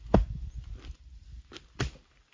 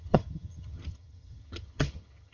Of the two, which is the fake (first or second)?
second